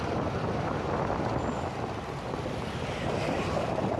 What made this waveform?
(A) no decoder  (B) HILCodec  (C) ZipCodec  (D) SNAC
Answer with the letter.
A